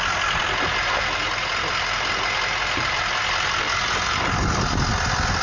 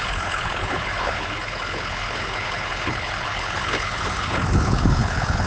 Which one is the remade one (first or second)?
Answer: second